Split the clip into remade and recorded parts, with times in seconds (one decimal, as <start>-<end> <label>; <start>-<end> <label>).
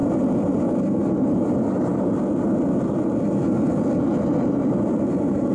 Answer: 0.0-5.5 recorded